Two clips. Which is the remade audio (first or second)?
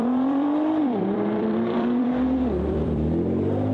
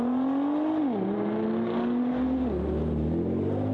first